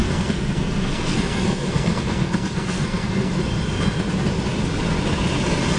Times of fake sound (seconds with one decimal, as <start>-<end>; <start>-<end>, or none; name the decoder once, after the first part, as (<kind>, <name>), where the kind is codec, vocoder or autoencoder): 0.0-3.3 (codec, SNAC)